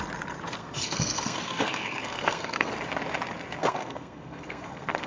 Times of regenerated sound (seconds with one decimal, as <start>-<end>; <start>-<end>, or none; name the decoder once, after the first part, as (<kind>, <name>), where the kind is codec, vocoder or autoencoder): 0.6-2.7 (codec, SNAC); 3.6-5.1